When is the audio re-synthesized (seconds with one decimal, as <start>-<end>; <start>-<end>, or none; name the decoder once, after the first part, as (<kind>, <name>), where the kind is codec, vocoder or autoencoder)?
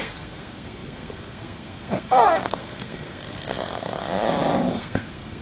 0.0-4.0 (codec, SNAC); 4.7-5.4